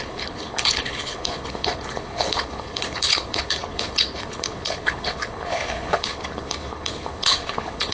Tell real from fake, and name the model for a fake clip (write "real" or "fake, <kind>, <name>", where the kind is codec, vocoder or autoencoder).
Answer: fake, codec, HILCodec